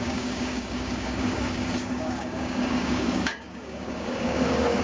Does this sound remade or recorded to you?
remade